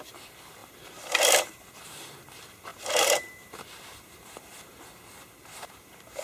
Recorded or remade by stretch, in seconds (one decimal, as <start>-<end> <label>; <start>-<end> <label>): 0.0-6.2 remade